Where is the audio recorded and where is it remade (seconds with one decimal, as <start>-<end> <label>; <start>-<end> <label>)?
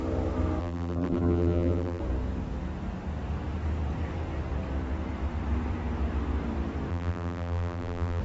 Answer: 0.0-0.6 recorded; 0.6-2.0 remade; 2.0-6.9 recorded; 6.9-8.2 remade